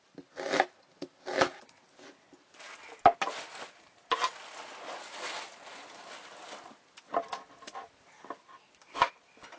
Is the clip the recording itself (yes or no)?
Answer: yes